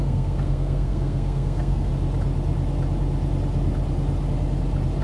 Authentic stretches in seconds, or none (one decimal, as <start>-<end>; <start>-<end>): 1.9-5.0